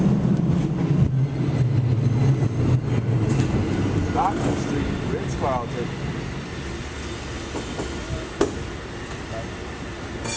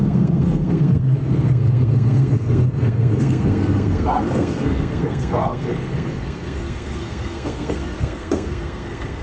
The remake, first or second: second